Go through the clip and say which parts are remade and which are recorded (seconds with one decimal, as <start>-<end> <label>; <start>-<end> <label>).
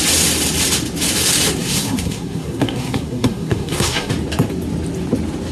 0.0-1.6 recorded; 1.6-4.1 remade; 4.1-5.5 recorded